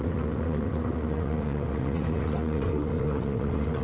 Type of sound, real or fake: fake